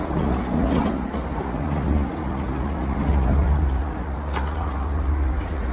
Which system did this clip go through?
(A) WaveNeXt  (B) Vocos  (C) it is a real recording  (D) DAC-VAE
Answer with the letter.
B